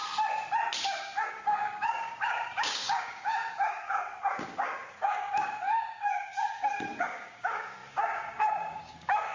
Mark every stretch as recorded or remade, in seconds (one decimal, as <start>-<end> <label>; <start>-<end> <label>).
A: 0.0-1.3 recorded; 1.3-9.3 remade